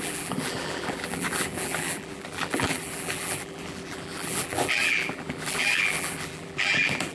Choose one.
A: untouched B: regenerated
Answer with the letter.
B